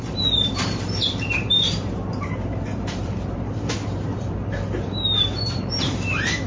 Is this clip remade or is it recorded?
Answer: remade